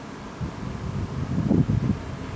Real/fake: real